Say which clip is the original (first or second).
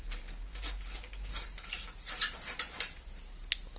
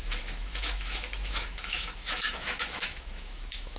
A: first